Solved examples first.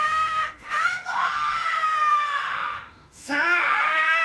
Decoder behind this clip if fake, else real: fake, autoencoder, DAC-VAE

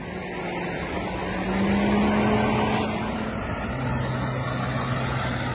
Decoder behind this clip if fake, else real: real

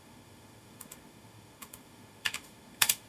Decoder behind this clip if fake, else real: fake, autoencoder, DAC-VAE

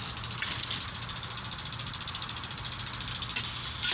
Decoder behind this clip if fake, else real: real